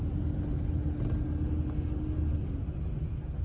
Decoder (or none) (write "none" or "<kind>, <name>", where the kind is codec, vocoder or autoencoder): none